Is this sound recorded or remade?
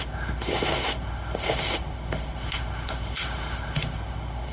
remade